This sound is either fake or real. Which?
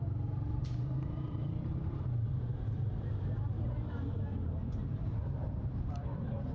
fake